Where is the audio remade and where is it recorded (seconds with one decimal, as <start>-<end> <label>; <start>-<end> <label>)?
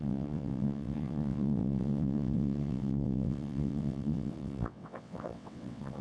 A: 0.0-6.0 remade